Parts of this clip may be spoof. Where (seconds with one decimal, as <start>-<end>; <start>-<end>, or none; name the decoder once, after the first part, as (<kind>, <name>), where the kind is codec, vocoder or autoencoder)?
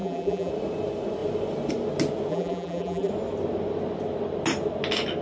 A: 0.0-0.5 (vocoder, BigVGAN v2); 2.3-3.1